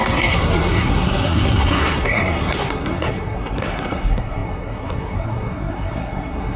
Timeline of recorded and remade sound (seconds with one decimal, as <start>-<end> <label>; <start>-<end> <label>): 0.0-6.6 remade